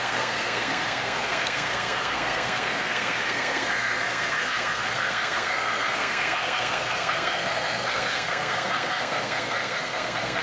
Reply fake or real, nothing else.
fake